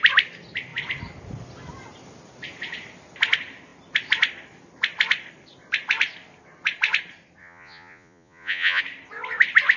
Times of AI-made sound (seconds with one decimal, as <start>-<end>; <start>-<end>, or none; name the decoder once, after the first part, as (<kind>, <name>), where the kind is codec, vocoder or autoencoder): 7.4-8.8 (vocoder, Vocos)